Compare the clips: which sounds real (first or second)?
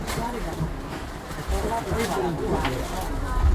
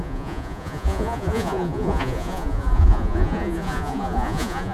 first